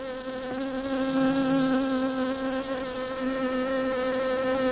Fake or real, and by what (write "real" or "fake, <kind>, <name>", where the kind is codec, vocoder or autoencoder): real